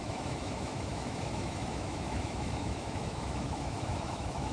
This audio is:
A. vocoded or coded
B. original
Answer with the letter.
A